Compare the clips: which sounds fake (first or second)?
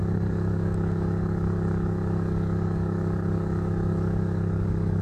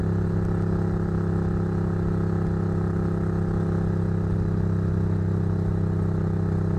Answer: first